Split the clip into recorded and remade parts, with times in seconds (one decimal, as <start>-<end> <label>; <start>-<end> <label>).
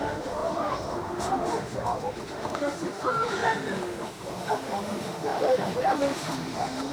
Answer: 0.0-6.9 remade